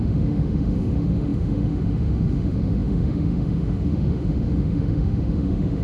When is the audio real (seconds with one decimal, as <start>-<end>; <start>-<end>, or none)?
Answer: none